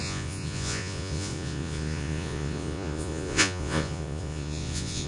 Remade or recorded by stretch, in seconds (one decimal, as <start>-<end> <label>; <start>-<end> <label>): 0.0-5.1 remade

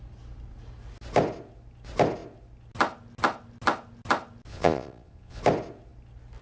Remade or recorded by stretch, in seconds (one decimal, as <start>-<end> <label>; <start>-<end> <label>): 0.0-4.5 recorded; 4.5-5.4 remade; 5.4-6.4 recorded

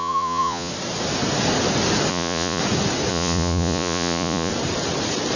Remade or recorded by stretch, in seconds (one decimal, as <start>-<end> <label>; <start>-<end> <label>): 0.0-0.7 remade; 0.7-2.1 recorded; 2.1-2.6 remade; 2.6-3.1 recorded; 3.1-4.5 remade; 4.5-5.4 recorded

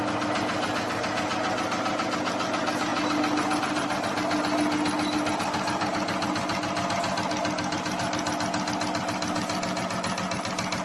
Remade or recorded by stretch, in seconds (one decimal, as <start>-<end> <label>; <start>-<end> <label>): 0.0-10.8 recorded

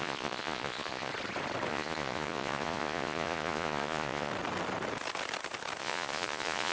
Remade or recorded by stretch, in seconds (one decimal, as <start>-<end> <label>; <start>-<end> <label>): 0.0-1.1 remade; 1.1-1.7 recorded; 1.7-4.3 remade; 4.3-5.8 recorded; 5.8-6.7 remade

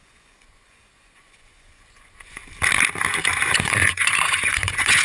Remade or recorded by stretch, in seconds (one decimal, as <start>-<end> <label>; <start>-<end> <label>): 0.0-2.4 remade; 2.4-3.5 recorded; 3.5-5.0 remade

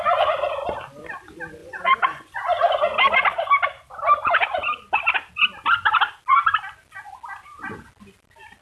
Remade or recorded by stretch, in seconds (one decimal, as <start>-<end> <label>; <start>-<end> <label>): 0.0-1.6 recorded; 1.6-2.6 remade; 2.6-8.6 recorded